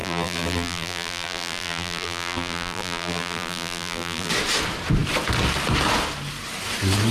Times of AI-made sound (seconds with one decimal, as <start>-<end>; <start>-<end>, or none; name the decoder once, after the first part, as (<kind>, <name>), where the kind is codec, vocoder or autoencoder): 0.0-4.3 (vocoder, BigVGAN v2)